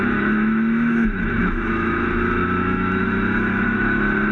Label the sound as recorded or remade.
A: remade